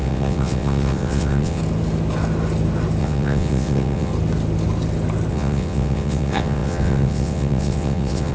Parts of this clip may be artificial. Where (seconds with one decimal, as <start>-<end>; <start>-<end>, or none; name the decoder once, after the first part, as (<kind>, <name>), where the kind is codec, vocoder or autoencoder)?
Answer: 0.0-1.6 (vocoder, WaveNeXt); 3.0-4.1; 5.3-8.3